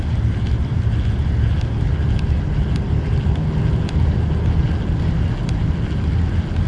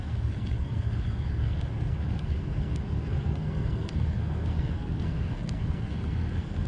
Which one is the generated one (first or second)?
second